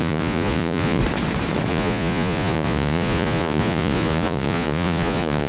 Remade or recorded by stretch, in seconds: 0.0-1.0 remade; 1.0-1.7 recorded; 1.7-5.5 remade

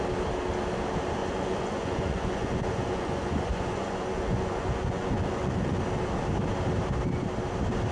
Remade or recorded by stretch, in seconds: 0.0-1.2 recorded; 1.2-5.8 remade; 5.8-7.9 recorded

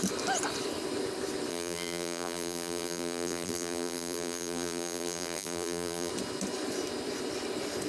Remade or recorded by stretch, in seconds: 0.0-1.5 recorded; 1.5-6.1 remade; 6.1-7.9 recorded

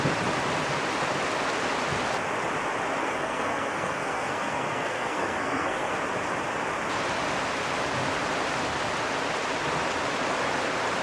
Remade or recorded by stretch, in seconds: 0.0-3.0 recorded; 3.0-5.9 remade; 5.9-11.0 recorded

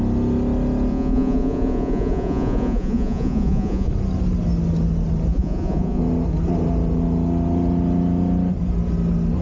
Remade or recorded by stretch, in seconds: 0.0-0.9 recorded; 0.9-3.9 remade; 3.9-5.3 recorded; 5.3-6.0 remade; 6.0-9.4 recorded

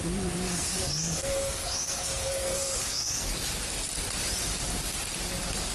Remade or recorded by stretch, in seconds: 0.0-0.5 recorded; 0.5-3.3 remade; 3.3-5.7 recorded